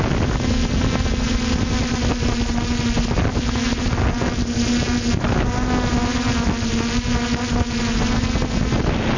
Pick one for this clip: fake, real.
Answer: real